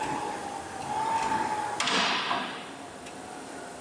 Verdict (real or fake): real